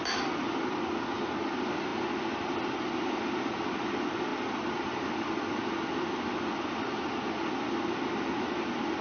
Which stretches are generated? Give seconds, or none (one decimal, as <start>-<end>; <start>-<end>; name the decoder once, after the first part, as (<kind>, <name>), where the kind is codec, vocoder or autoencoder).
4.3-6.2 (vocoder, BigVGAN v2)

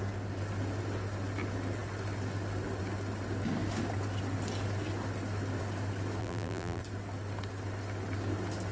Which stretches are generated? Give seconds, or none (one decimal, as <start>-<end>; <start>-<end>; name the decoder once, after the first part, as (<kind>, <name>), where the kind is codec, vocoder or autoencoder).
6.2-6.8 (vocoder, BigVGAN v2)

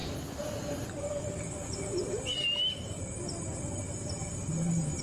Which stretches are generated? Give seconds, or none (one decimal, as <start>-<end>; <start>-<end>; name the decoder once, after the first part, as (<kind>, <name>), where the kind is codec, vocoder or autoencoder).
3.8-5.0 (vocoder, BigVGAN v2)

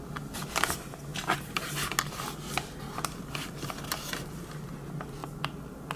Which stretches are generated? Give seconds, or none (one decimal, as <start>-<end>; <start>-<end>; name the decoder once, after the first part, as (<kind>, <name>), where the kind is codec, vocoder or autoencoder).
none

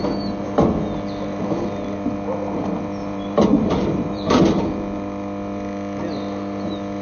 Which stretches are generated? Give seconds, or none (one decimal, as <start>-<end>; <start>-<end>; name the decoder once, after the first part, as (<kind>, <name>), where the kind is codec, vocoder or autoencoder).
3.0-4.4 (vocoder, BigVGAN v2)

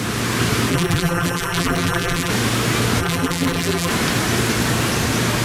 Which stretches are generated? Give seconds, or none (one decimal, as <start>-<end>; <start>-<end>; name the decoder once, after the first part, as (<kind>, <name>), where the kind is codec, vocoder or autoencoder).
0.7-2.3 (vocoder, BigVGAN v2); 3.0-3.9

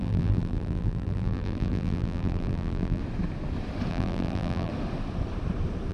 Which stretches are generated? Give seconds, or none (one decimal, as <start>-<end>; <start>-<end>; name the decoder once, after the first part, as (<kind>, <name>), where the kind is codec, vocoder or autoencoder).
0.0-3.0 (vocoder, BigVGAN v2); 3.9-4.7

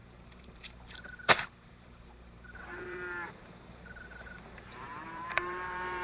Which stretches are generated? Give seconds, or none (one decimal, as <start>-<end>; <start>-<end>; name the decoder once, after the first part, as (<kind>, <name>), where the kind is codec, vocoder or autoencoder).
0.0-6.0 (vocoder, BigVGAN v2)